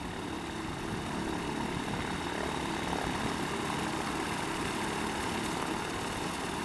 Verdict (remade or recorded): recorded